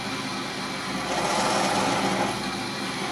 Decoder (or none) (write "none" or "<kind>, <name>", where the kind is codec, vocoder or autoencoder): none